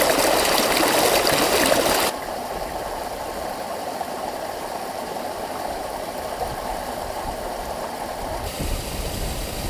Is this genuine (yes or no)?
no